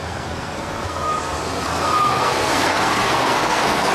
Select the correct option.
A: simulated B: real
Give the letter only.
A